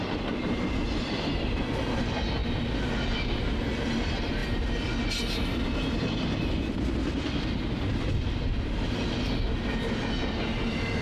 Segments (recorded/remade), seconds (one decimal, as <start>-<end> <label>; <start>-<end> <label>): 0.0-11.0 recorded